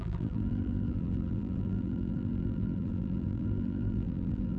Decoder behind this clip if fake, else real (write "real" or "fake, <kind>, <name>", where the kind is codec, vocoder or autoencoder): fake, vocoder, BigVGAN v2